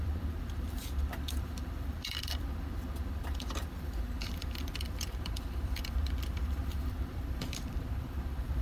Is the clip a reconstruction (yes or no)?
yes